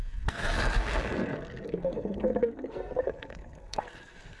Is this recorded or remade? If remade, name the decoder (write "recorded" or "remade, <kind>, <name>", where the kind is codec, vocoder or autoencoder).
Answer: remade, codec, SNAC